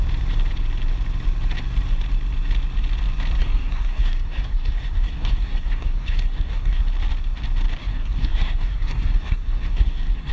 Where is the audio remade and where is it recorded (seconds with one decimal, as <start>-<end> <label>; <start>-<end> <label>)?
0.0-3.4 recorded; 3.4-6.8 remade; 6.8-7.8 recorded; 7.8-10.3 remade